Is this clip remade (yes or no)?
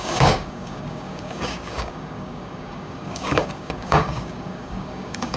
yes